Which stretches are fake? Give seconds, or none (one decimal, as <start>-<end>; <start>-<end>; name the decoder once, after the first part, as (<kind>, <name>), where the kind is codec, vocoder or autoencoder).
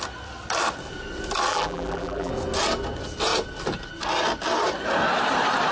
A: 1.5-2.3 (vocoder, BigVGAN v2)